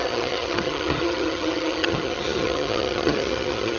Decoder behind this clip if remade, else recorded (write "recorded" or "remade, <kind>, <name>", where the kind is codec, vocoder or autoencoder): remade, vocoder, HiFi-GAN